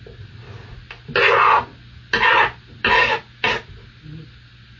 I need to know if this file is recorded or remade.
recorded